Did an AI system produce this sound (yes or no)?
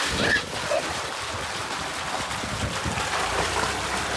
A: no